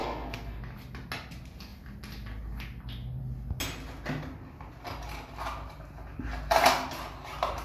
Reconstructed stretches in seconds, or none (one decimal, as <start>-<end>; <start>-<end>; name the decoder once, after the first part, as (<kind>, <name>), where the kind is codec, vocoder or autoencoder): 0.0-0.6 (codec, SNAC)